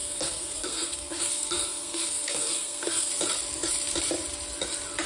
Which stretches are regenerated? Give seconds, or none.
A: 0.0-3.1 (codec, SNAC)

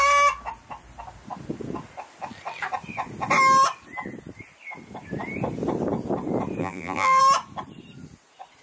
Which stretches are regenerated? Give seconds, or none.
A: 6.6-7.2 (vocoder, BigVGAN v2)

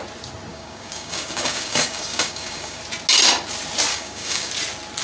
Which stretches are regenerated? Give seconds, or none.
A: 0.5-2.8 (codec, DAC); 3.9-4.5